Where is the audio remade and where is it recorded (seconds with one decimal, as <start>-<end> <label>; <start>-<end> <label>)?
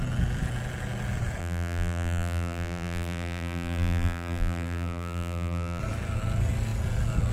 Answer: 0.0-1.4 recorded; 1.4-5.8 remade; 5.8-7.3 recorded